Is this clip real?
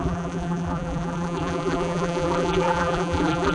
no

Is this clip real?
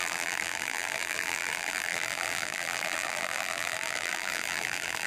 no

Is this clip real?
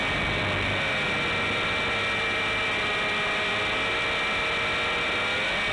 yes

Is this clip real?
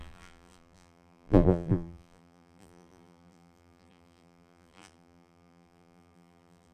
no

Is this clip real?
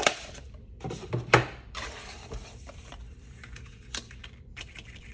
no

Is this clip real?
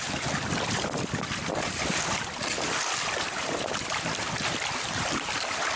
no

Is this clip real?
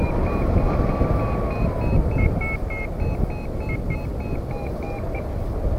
yes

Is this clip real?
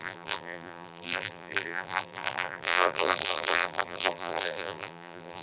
no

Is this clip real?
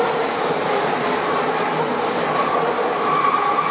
no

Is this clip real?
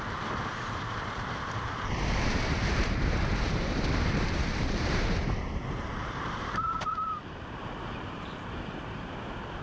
no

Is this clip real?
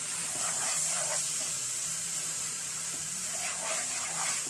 no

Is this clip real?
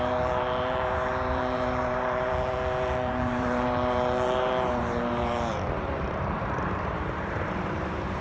no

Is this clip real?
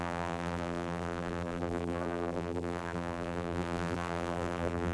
no